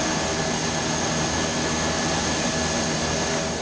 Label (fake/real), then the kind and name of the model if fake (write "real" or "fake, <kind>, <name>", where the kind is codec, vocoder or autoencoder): real